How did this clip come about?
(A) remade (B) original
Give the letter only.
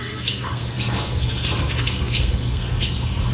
A